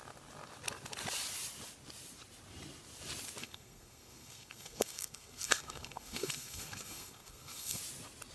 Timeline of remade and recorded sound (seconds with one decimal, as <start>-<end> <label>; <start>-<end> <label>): 0.0-3.4 recorded; 3.4-7.8 remade; 7.8-8.3 recorded